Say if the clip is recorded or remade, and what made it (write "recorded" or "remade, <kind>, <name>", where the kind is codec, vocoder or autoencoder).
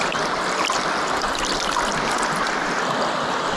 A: remade, vocoder, BigVGAN v2